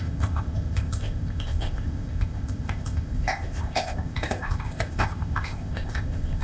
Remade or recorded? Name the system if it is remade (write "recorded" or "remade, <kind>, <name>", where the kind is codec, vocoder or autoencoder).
remade, codec, ZipCodec